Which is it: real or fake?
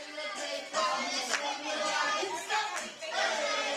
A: real